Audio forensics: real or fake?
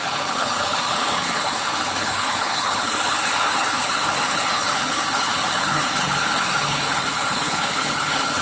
fake